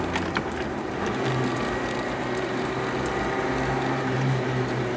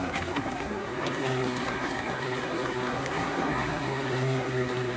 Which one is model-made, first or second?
second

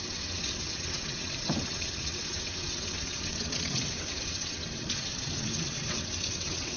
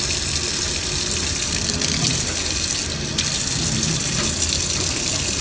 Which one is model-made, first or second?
first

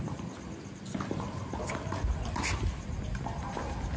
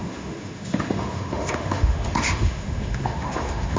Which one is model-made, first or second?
second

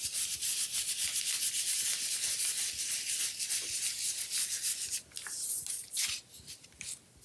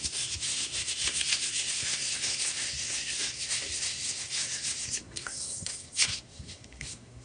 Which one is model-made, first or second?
second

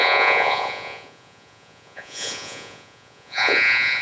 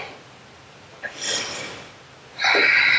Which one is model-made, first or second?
first